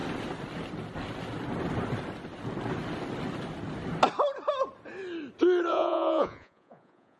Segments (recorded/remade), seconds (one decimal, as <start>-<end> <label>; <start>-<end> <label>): 0.0-5.7 recorded; 5.7-7.2 remade